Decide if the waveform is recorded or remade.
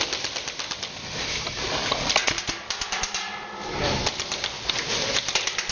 recorded